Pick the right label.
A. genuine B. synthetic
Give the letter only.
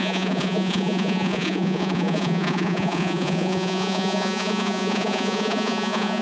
B